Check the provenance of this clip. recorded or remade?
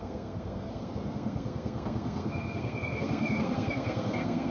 remade